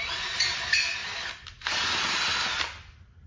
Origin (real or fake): real